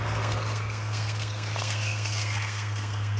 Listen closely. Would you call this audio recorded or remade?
remade